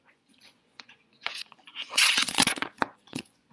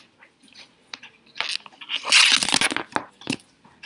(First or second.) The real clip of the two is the second